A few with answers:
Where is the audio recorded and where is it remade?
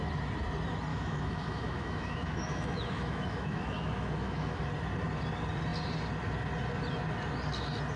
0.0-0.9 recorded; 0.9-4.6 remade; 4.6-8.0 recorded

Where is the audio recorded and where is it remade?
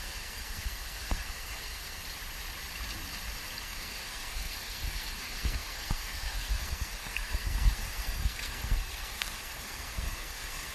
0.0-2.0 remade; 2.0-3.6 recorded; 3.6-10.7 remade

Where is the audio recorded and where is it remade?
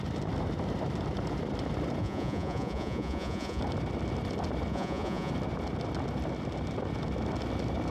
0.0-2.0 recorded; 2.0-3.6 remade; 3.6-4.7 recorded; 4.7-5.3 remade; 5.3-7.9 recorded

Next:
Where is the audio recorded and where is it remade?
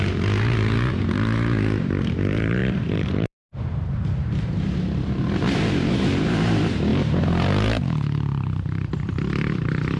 0.0-10.0 remade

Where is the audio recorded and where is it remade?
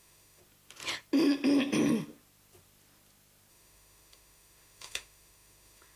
0.0-0.4 remade; 0.4-3.5 recorded; 3.5-6.0 remade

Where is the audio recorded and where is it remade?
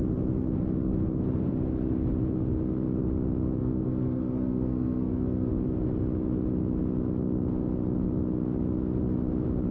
0.0-3.6 recorded; 3.6-5.5 remade; 5.5-9.7 recorded